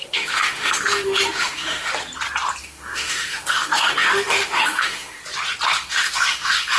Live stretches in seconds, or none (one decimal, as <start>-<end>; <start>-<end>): 1.9-2.6; 5.2-5.9